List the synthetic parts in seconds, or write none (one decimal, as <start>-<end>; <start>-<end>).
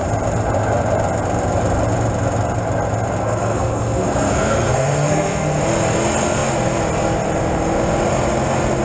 3.2-5.6